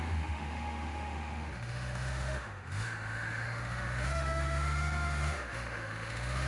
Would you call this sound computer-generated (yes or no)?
yes